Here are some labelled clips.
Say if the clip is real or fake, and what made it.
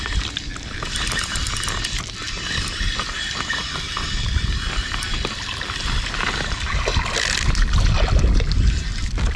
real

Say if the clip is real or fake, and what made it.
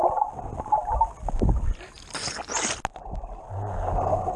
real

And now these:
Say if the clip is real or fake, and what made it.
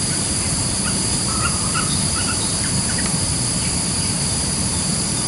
fake, vocoder, BigVGAN v2